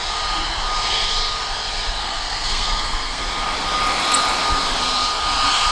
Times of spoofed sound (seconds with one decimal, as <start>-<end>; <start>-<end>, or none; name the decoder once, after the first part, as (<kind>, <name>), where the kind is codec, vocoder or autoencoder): 2.0-3.2 (codec, SNAC)